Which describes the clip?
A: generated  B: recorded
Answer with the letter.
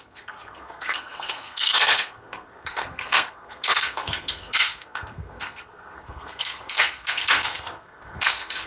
A